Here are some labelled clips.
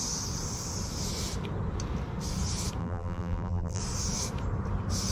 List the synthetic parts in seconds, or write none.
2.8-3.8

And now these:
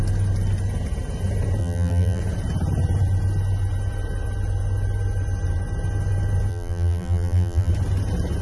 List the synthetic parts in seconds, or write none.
1.6-2.2; 6.5-7.7

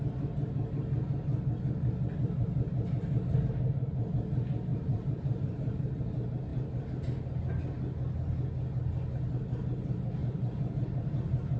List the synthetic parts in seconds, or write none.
4.7-5.9; 6.5-7.0; 10.2-10.7